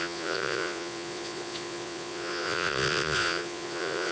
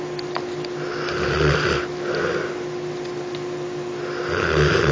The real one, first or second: second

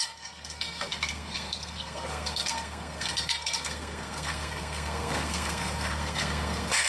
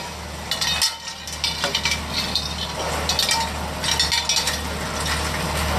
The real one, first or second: second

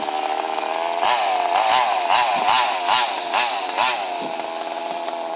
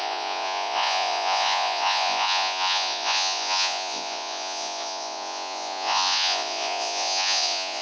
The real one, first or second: first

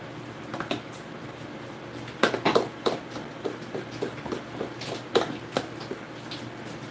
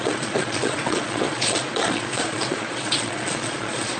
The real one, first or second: first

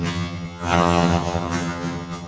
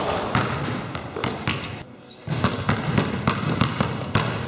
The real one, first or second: second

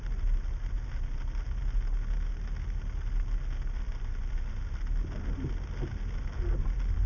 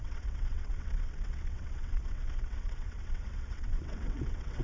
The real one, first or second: first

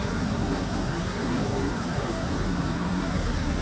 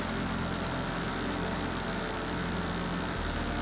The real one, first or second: second